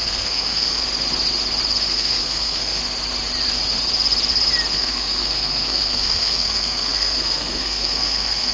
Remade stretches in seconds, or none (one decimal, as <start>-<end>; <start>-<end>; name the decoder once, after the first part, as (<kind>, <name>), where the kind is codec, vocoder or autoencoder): 0.0-0.8 (codec, SNAC); 1.9-2.8; 4.7-8.5